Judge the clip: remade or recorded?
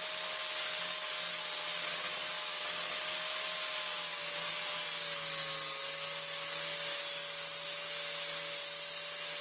recorded